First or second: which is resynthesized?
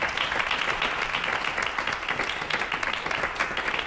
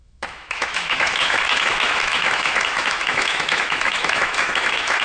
second